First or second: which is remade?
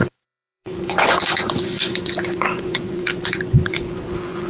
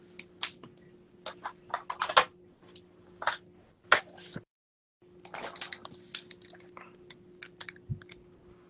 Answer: first